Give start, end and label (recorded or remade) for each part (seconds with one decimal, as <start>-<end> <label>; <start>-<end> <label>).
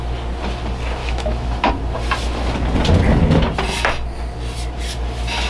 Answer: 0.0-1.0 recorded; 1.0-1.7 remade; 1.7-5.5 recorded